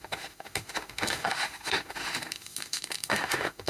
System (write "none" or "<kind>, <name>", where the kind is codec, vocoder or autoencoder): autoencoder, DAC-VAE